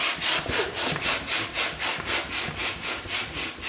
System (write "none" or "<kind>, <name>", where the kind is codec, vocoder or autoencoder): none